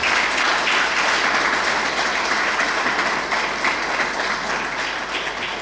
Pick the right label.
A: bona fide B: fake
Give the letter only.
A